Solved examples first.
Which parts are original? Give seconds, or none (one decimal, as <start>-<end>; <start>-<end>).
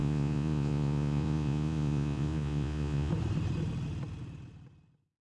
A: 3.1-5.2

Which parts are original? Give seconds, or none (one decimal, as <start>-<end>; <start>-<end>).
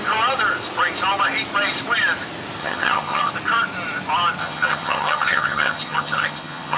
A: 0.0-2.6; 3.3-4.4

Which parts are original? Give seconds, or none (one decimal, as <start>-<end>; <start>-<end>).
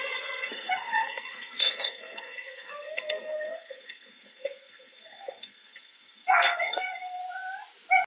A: 7.2-8.1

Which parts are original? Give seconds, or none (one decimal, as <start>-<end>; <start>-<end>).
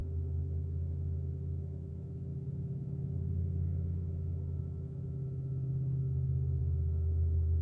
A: none